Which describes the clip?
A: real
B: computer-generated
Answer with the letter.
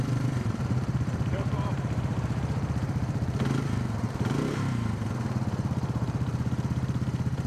B